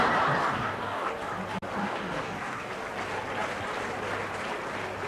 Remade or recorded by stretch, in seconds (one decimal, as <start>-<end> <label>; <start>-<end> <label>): 0.0-0.4 recorded; 0.4-1.1 remade; 1.1-1.8 recorded; 1.8-2.7 remade; 2.7-5.1 recorded